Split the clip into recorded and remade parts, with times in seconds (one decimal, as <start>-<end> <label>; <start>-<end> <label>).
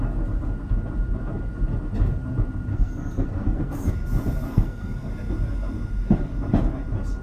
0.0-2.7 recorded; 2.7-3.9 remade; 3.9-4.5 recorded; 4.5-5.1 remade; 5.1-7.2 recorded